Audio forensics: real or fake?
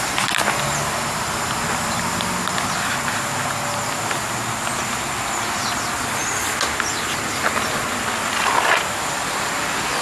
real